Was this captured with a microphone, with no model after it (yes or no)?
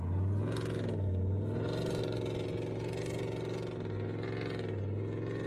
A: yes